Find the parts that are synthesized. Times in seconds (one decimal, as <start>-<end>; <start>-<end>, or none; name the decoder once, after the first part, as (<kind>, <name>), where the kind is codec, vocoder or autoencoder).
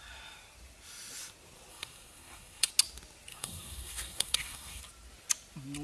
1.7-2.7 (codec, SNAC); 3.3-4.8